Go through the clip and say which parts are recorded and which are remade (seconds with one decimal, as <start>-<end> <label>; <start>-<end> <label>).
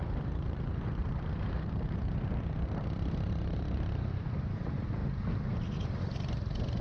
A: 0.0-5.0 remade; 5.0-5.5 recorded; 5.5-6.8 remade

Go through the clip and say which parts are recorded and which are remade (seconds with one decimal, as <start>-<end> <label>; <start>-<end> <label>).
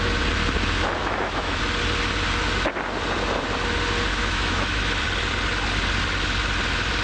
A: 0.0-1.0 recorded; 1.0-1.6 remade; 1.6-4.1 recorded; 4.1-4.8 remade; 4.8-7.0 recorded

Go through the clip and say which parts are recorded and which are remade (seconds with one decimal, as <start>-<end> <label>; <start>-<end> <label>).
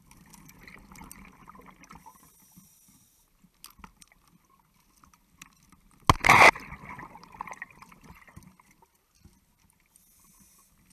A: 0.0-7.0 recorded; 7.0-8.3 remade; 8.3-10.9 recorded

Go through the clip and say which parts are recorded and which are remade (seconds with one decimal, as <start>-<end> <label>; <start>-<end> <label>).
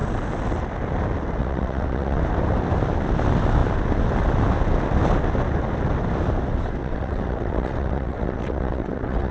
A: 0.0-1.4 recorded; 1.4-2.2 remade; 2.2-6.8 recorded; 6.8-9.3 remade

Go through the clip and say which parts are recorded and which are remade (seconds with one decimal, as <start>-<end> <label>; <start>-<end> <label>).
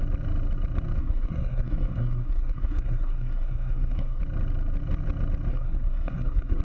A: 0.0-1.0 recorded; 1.0-4.2 remade; 4.2-5.5 recorded; 5.5-6.6 remade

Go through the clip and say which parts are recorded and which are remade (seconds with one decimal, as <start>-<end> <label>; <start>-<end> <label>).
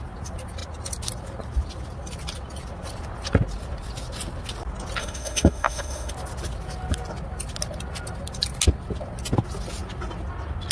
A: 0.0-5.0 recorded; 5.0-6.1 remade; 6.1-10.7 recorded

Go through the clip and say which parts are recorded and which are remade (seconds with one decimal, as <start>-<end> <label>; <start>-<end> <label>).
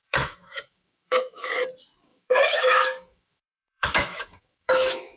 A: 0.0-1.6 remade; 1.6-2.1 recorded; 2.1-5.2 remade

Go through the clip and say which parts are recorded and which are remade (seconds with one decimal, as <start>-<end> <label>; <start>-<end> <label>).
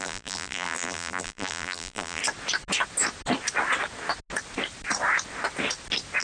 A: 0.0-2.2 remade; 2.2-6.2 recorded